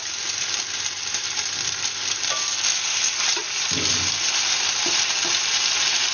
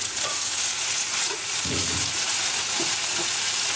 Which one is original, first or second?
first